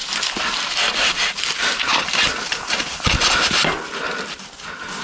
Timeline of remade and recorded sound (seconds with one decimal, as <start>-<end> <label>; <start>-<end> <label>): 0.0-5.0 recorded